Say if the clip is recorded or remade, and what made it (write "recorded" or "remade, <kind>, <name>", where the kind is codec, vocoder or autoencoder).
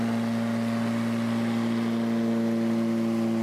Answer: recorded